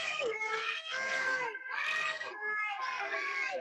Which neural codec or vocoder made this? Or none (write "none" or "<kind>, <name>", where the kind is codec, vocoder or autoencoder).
codec, SNAC